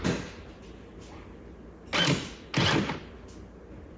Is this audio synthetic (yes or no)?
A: no